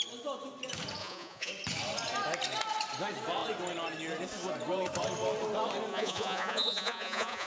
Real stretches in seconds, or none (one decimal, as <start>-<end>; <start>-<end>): 0.0-1.0; 1.5-5.9